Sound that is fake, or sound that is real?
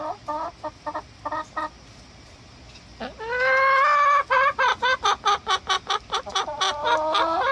real